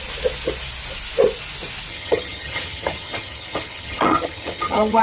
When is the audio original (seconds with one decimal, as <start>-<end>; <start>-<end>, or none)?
0.0-1.9

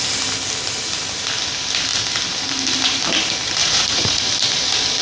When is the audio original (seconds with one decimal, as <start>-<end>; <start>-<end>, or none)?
0.0-3.6; 4.2-5.0

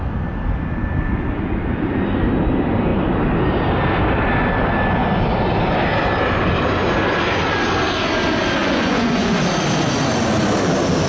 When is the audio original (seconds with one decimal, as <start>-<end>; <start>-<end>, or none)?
0.0-8.6; 9.4-11.1

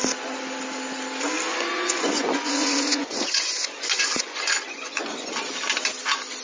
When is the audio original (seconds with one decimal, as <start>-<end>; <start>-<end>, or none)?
0.0-1.5; 5.3-6.4